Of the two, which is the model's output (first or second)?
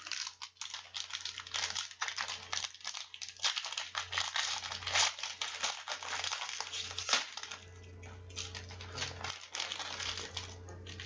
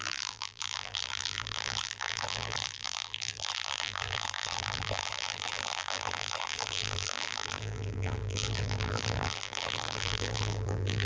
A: second